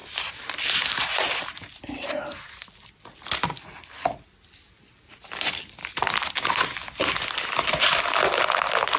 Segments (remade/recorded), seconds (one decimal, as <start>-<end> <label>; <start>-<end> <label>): 0.0-9.0 recorded